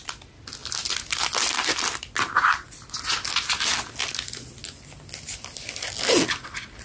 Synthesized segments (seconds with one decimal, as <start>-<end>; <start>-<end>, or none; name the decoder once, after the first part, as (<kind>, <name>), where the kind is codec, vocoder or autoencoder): none